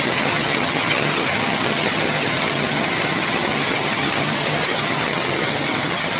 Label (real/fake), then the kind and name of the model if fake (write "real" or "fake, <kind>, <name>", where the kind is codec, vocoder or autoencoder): fake, vocoder, HiFi-GAN